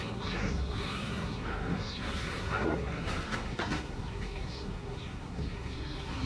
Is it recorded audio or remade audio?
remade